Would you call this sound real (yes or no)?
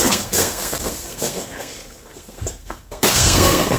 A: no